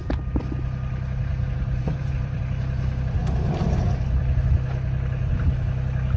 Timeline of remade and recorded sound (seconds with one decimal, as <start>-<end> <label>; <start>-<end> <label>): 0.0-1.3 recorded; 1.3-2.4 remade; 2.4-6.2 recorded